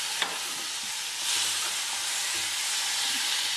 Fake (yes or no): no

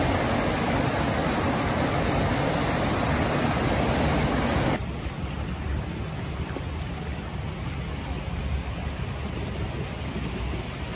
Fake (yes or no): no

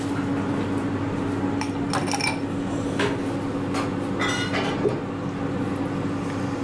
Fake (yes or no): no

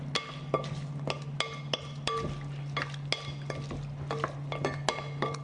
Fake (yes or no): no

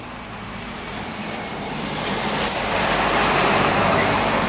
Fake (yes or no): yes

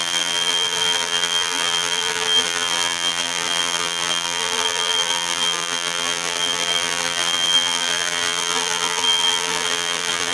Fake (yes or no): yes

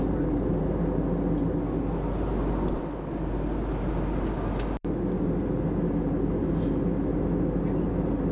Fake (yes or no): no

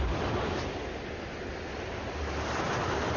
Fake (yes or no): no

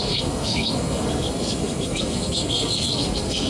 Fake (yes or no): yes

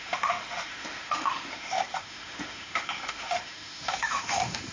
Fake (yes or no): yes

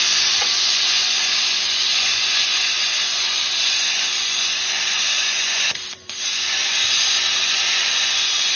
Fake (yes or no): yes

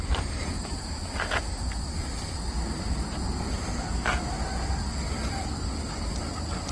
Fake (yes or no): no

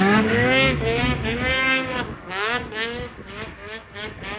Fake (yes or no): yes